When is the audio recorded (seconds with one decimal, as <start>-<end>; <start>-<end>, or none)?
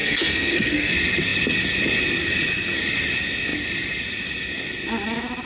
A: 0.9-5.5